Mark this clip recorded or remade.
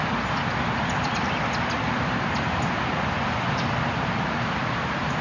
remade